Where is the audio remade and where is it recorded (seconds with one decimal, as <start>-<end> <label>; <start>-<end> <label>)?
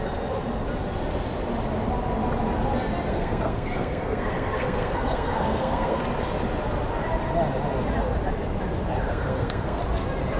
0.0-3.1 recorded; 3.1-6.0 remade; 6.0-9.1 recorded; 9.1-9.8 remade; 9.8-10.4 recorded